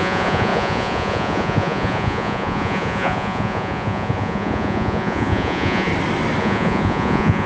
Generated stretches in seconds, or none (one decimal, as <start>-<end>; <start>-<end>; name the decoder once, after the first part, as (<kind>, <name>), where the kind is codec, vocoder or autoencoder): 0.0-5.9 (vocoder, Vocos); 6.4-7.5